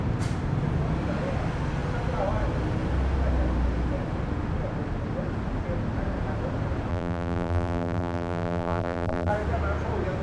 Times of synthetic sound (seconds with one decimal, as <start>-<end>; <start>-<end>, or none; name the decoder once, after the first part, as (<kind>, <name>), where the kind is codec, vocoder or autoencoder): 6.9-9.3 (vocoder, BigVGAN v2)